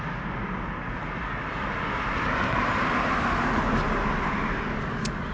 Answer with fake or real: real